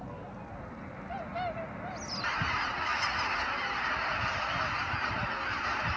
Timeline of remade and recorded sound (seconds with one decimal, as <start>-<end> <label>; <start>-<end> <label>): 0.0-6.0 recorded